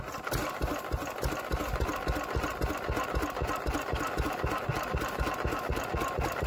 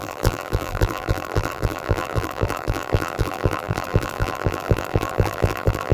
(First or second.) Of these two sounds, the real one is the first